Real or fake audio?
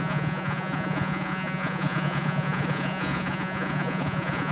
fake